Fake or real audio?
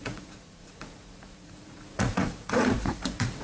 fake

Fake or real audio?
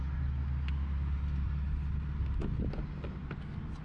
real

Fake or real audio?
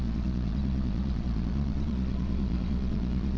fake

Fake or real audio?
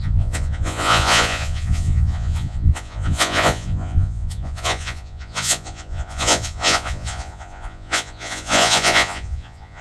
fake